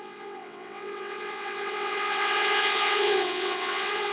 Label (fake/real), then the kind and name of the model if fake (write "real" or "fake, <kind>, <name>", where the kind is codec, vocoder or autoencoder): fake, vocoder, WaveNeXt